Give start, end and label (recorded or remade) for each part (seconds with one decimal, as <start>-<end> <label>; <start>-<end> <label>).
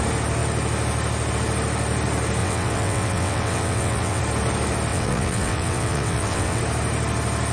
0.0-2.4 recorded; 2.4-4.2 remade; 4.2-4.9 recorded; 4.9-6.6 remade; 6.6-7.5 recorded